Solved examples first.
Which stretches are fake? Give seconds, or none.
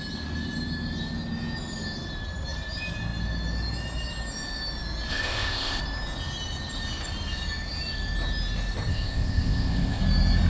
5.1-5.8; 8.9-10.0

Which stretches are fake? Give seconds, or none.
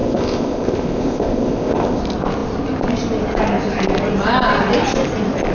0.0-2.0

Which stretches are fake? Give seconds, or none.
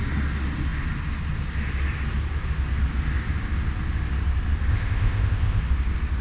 4.7-5.6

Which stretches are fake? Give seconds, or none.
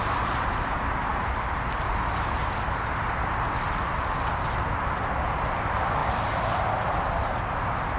none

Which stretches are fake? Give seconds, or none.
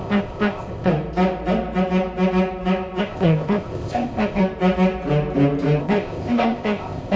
0.0-0.9; 3.0-4.4; 5.8-7.2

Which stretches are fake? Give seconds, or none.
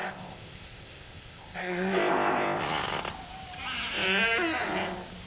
0.0-2.6